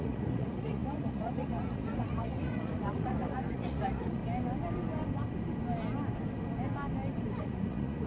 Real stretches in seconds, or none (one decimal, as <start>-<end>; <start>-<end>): 4.2-7.4